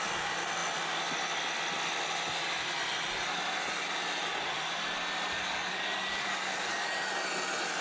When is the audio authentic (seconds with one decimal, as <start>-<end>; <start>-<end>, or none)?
0.0-5.4; 6.9-7.8